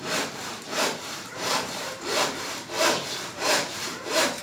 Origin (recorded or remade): remade